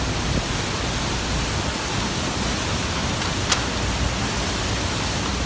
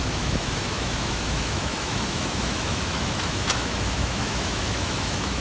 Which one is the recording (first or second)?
first